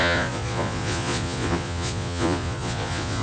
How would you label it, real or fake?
fake